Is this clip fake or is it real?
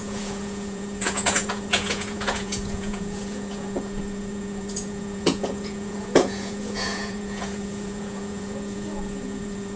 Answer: fake